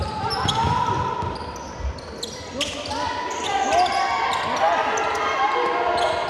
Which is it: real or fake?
real